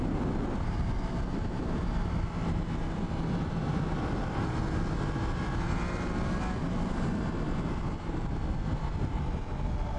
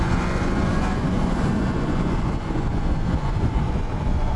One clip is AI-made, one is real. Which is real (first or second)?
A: first